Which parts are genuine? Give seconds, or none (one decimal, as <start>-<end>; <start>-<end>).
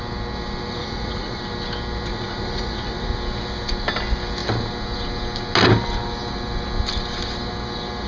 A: 0.0-0.8; 1.4-2.1; 3.1-8.1